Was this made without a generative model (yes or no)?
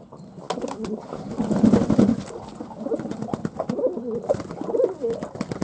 yes